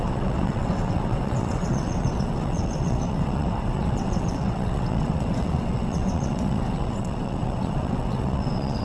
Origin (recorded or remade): remade